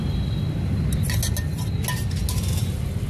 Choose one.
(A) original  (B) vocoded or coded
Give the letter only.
A